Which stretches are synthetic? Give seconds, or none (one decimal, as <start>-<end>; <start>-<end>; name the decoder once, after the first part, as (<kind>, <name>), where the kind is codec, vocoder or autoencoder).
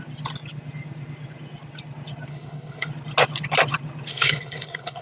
2.3-2.9 (codec, HILCodec); 4.1-5.0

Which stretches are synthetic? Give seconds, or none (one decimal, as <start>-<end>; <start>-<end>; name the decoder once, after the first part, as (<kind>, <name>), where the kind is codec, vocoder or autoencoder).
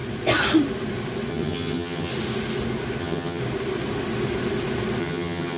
1.3-2.1 (vocoder, HiFi-GAN); 3.0-3.4; 5.0-5.6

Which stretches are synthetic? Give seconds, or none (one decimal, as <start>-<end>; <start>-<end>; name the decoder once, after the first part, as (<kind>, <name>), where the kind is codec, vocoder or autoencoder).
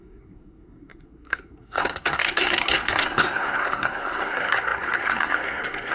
0.0-5.9 (codec, SNAC)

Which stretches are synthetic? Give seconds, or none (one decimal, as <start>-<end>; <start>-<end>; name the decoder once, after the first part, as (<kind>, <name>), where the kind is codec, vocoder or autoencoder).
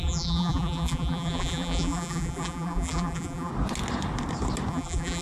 0.0-3.5 (vocoder, BigVGAN v2); 4.7-5.2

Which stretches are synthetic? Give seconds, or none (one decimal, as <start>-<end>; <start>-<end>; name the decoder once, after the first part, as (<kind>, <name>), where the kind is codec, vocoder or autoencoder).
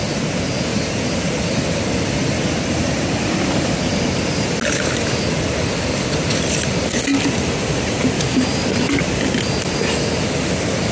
0.7-3.8 (vocoder, BigVGAN v2)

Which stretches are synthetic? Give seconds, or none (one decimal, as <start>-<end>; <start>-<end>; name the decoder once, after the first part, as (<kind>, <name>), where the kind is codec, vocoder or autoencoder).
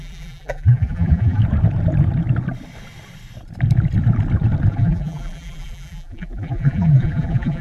0.0-1.4 (vocoder, BigVGAN v2); 4.7-7.6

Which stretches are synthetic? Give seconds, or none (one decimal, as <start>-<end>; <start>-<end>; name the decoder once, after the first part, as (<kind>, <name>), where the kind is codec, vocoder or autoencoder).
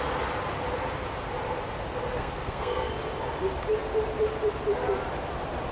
2.2-2.9 (codec, SNAC)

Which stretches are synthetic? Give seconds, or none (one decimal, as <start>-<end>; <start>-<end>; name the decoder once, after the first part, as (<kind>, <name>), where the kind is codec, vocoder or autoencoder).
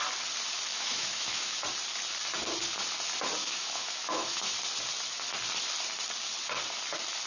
0.7-1.6 (autoencoder, DAC-VAE); 3.4-4.6